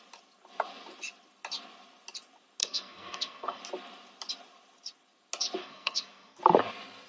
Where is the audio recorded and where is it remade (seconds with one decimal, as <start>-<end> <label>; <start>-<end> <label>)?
0.0-2.6 recorded; 2.6-3.6 remade; 3.6-5.6 recorded; 5.6-6.4 remade; 6.4-7.1 recorded